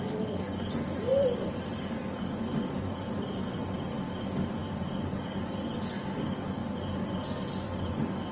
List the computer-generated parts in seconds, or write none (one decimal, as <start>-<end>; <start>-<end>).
none